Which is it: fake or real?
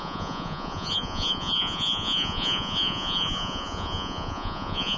fake